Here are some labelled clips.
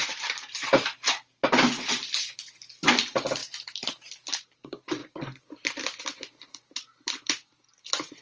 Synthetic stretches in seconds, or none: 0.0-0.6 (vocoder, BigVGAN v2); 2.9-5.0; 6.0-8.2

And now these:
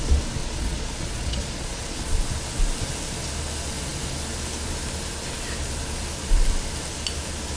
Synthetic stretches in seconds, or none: 0.4-2.2 (vocoder, Vocos)

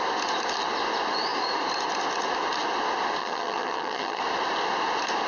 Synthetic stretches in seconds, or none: 3.2-4.2 (vocoder, HiFi-GAN)

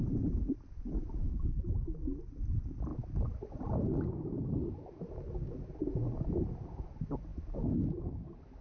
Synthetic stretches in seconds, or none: none

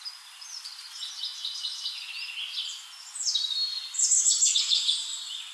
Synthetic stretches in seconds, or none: none

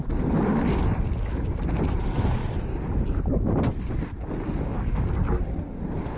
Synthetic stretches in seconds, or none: none

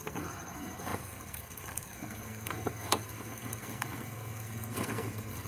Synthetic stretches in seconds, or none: 0.0-5.5 (codec, SNAC)

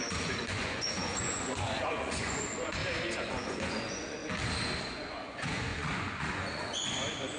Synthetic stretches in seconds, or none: 0.0-2.8 (vocoder, Vocos); 3.3-4.2; 4.8-7.4